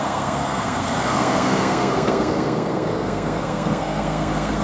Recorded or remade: remade